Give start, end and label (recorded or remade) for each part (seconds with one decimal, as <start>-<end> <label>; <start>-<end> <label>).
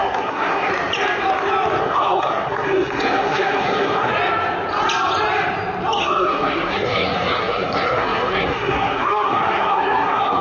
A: 0.0-0.7 remade; 0.7-1.8 recorded; 1.8-4.1 remade; 4.1-6.0 recorded; 6.0-10.4 remade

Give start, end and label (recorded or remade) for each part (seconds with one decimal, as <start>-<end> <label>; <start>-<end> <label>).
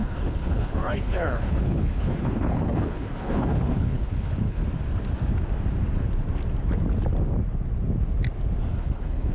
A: 0.0-4.6 remade; 4.6-8.7 recorded; 8.7-9.3 remade